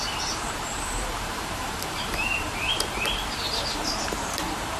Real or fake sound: fake